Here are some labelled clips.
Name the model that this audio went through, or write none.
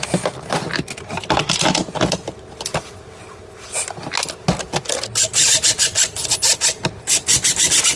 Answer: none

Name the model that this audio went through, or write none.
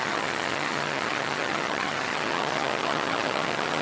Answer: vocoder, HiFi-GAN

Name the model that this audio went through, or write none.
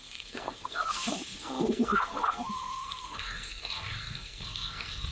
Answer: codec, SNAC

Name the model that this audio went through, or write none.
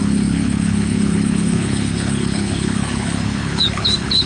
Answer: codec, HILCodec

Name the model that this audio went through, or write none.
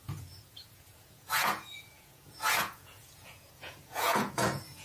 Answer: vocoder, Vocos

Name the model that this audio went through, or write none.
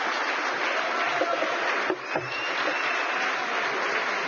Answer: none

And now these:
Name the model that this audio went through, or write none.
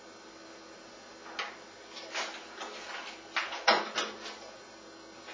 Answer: none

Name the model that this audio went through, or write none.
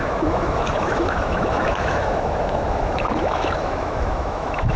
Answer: autoencoder, DAC-VAE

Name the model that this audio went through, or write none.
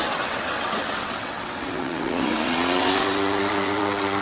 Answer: vocoder, WaveNeXt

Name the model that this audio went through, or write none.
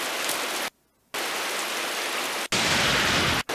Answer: none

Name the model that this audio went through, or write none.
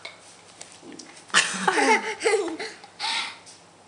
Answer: none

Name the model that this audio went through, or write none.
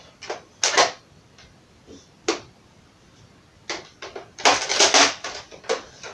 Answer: none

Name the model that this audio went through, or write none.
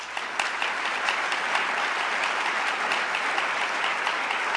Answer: none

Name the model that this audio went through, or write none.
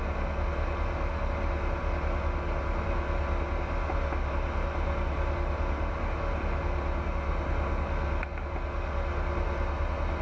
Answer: none